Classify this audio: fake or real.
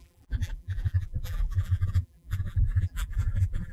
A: fake